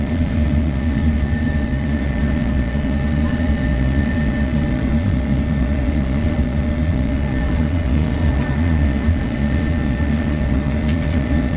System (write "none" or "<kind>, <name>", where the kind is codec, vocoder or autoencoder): vocoder, Vocos